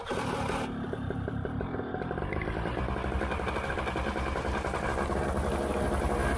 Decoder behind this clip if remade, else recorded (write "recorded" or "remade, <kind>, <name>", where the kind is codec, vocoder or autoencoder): recorded